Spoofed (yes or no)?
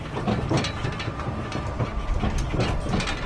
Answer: no